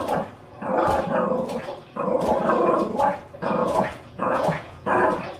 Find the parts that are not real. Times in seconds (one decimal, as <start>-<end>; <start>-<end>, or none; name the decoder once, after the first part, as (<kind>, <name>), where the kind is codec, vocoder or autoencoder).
3.6-4.9 (vocoder, Vocos)